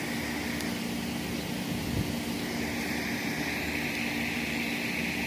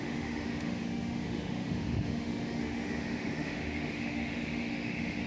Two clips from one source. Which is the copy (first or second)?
second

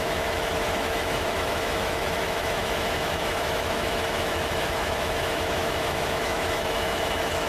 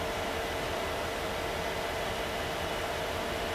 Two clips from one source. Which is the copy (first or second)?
first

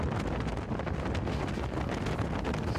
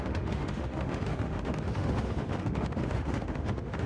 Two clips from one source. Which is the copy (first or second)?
second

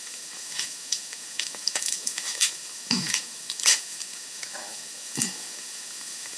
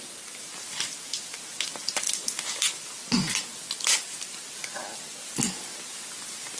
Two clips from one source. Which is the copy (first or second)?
first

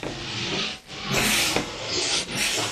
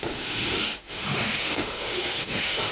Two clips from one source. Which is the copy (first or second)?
second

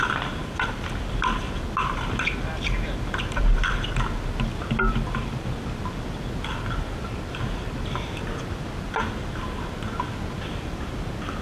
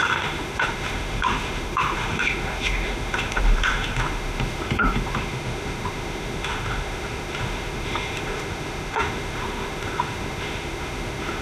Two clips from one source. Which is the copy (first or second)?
second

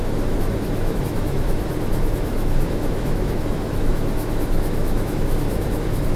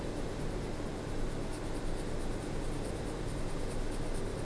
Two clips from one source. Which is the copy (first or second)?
first